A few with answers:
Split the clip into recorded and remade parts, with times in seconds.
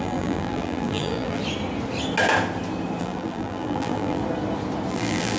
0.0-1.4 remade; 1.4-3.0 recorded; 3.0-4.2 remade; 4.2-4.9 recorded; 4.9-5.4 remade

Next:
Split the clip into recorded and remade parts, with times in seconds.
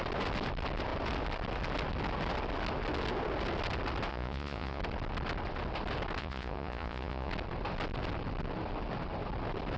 0.0-4.1 recorded; 4.1-4.8 remade; 4.8-6.2 recorded; 6.2-7.3 remade; 7.3-9.8 recorded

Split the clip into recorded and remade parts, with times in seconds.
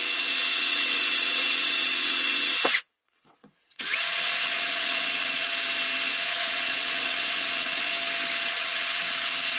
0.0-5.5 remade; 5.5-6.1 recorded; 6.1-7.9 remade; 7.9-8.5 recorded; 8.5-9.6 remade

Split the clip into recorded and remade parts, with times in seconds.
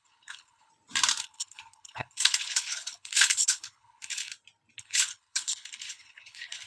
0.0-0.7 remade; 0.7-1.2 recorded; 1.2-4.3 remade; 4.3-4.8 recorded; 4.8-6.7 remade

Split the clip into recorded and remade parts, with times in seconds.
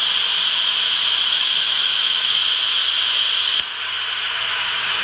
0.0-1.3 recorded; 1.3-2.4 remade; 2.4-4.3 recorded; 4.3-5.0 remade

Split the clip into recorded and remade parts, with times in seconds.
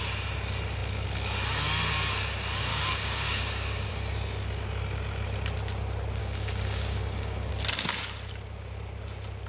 0.0-2.7 recorded; 2.7-3.9 remade; 3.9-6.2 recorded; 6.2-7.5 remade; 7.5-9.5 recorded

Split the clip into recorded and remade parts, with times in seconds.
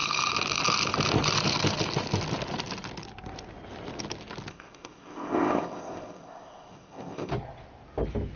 0.0-4.5 recorded; 4.5-7.3 remade; 7.3-8.4 recorded